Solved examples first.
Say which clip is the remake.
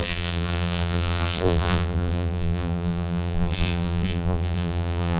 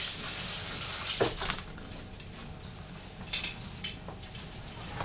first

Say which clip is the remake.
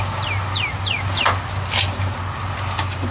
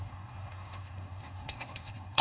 second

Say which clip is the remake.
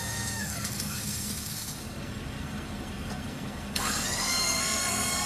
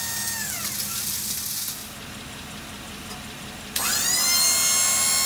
first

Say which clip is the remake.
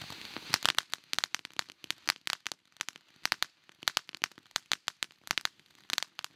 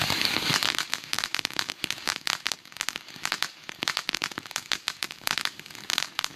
second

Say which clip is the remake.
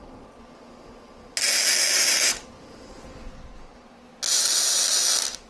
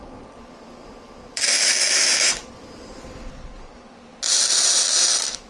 second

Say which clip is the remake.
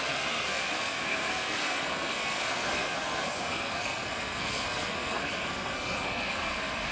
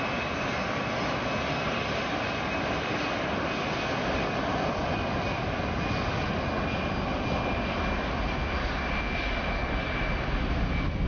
first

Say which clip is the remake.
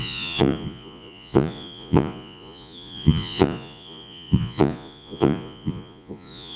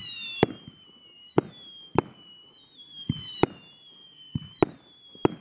first